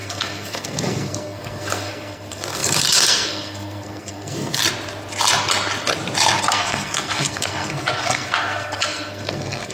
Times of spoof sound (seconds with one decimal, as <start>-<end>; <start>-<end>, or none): 0.0-4.6; 6.4-9.7